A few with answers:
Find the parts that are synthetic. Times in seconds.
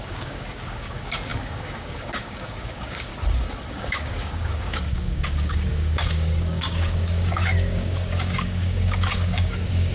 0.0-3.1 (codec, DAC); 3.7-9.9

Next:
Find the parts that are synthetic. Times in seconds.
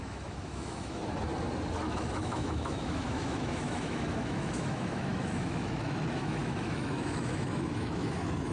0.0-1.0 (autoencoder, DAC-VAE); 1.8-8.5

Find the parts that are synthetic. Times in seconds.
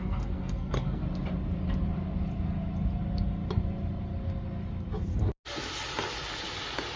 0.0-1.0 (codec, SNAC)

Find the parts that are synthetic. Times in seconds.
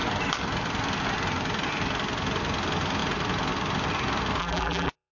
4.4-5.1 (vocoder, BigVGAN v2)